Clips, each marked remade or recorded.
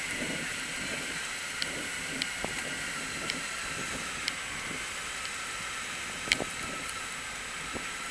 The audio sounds recorded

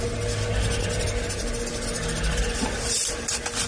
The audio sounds recorded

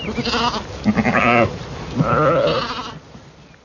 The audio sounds recorded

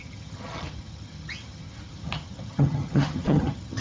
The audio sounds remade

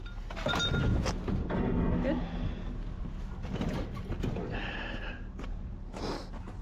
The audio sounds recorded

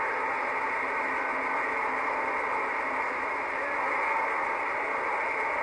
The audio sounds recorded